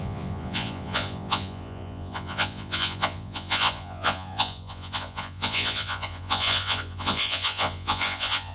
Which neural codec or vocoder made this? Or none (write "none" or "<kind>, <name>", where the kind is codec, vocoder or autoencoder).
vocoder, Vocos